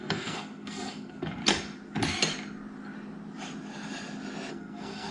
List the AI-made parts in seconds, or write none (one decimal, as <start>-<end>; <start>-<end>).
0.0-1.4; 4.5-5.1